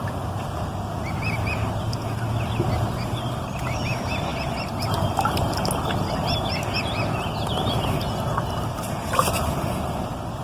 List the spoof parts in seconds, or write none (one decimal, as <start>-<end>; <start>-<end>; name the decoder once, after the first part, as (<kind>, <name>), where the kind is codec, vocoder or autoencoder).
none